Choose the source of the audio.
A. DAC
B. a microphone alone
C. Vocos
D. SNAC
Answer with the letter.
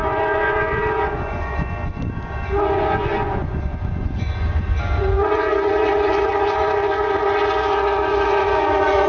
C